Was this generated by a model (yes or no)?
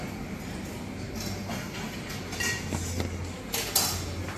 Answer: no